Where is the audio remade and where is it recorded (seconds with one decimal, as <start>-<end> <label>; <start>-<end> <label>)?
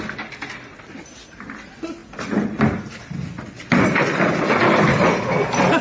0.0-5.8 recorded